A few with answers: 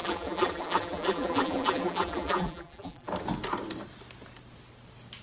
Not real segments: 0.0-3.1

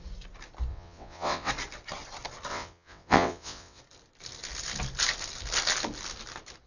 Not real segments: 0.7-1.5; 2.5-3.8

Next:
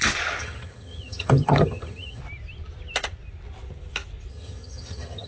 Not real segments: 0.4-2.2; 4.3-5.3

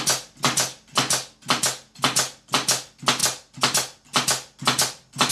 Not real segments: none

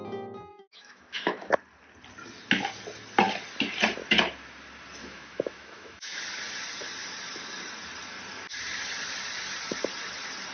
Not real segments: 0.5-1.5; 5.0-6.2

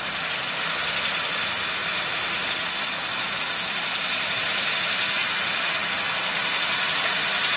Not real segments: 1.8-4.8

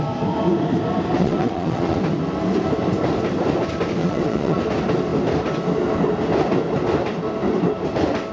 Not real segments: 1.2-2.0; 4.0-4.6

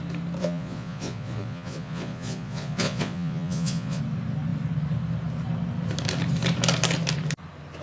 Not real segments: 0.4-4.0